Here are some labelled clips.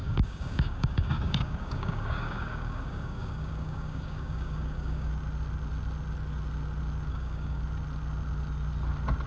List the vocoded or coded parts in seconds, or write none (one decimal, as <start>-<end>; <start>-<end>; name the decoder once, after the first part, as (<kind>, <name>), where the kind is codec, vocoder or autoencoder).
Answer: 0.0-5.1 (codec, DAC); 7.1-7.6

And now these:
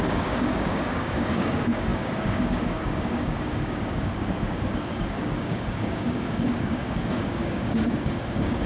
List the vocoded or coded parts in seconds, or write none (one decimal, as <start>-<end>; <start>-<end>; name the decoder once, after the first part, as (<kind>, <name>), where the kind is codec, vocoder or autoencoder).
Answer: 0.0-8.7 (codec, DAC)

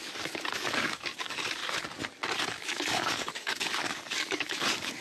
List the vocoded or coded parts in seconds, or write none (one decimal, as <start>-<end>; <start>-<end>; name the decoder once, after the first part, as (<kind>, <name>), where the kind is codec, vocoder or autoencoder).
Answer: 0.0-1.6 (codec, DAC); 2.4-5.0

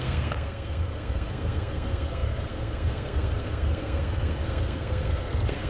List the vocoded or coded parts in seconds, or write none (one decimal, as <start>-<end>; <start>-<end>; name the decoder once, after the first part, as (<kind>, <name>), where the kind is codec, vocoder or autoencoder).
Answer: 0.0-5.7 (codec, SNAC)

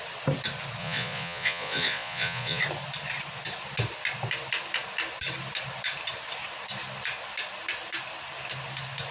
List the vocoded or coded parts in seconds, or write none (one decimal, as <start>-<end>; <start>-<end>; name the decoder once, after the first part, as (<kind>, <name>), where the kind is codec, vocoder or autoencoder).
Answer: 0.8-2.6 (vocoder, Vocos)

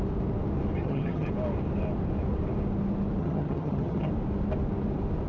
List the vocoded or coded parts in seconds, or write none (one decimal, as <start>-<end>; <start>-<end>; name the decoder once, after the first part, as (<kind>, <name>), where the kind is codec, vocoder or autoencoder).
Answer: 0.8-1.3 (vocoder, HiFi-GAN); 3.2-4.1

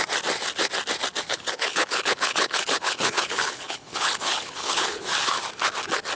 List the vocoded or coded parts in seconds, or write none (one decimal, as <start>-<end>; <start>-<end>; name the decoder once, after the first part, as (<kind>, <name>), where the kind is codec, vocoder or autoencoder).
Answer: 1.3-5.0 (codec, HILCodec)

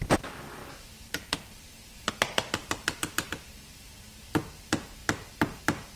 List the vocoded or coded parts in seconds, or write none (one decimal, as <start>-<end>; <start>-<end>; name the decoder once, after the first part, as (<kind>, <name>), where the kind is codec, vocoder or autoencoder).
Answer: 0.6-2.1 (vocoder, BigVGAN v2); 2.6-4.0; 5.0-5.6